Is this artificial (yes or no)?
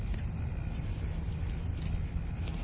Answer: no